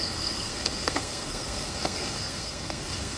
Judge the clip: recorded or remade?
remade